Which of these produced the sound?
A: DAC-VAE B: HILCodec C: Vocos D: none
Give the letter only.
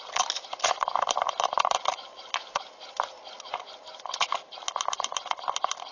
D